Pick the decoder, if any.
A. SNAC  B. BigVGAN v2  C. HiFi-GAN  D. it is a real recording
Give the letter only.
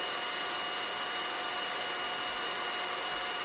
D